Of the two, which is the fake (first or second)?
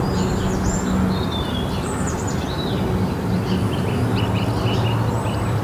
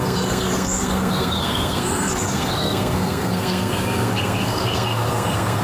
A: second